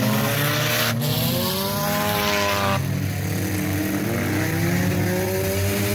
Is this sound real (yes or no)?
yes